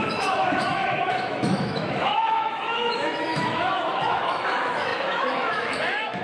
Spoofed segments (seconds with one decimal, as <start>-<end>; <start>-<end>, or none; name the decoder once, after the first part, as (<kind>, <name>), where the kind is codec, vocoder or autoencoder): 0.0-6.2 (autoencoder, DAC-VAE)